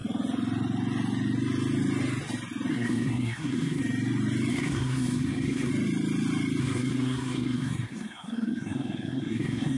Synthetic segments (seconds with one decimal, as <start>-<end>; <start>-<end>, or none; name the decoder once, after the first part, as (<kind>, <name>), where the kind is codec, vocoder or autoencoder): 2.7-3.8 (codec, SNAC); 4.5-5.7; 6.6-9.8